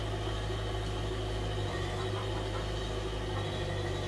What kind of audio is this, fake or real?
real